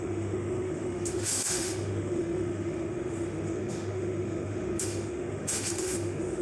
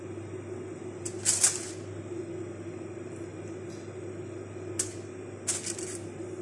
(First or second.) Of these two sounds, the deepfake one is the first